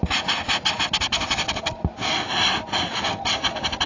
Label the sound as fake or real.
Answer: real